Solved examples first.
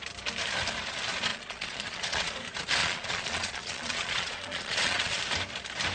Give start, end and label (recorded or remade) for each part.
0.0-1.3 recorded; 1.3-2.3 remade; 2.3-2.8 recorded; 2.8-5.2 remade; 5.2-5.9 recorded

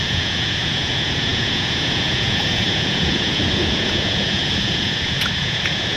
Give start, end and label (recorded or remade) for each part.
0.0-6.0 remade